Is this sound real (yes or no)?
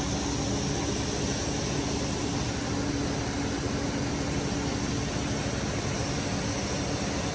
yes